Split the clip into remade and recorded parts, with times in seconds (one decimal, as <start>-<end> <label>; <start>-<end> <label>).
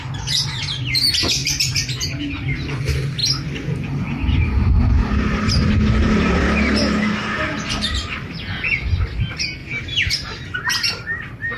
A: 0.0-11.6 recorded